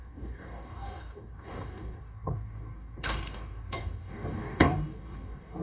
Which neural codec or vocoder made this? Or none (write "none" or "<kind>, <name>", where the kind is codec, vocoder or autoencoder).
codec, DAC